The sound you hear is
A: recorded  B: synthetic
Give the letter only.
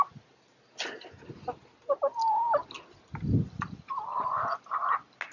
A